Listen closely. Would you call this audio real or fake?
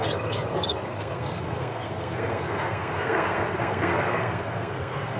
fake